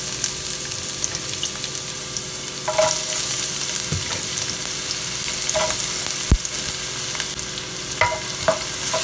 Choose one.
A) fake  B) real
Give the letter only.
B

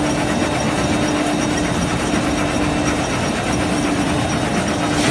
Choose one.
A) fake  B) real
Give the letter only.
B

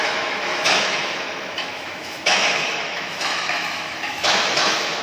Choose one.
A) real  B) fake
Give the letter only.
B